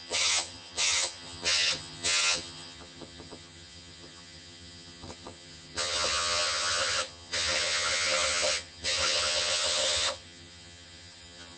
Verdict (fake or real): fake